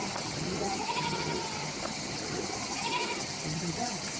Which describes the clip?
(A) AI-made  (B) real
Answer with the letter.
A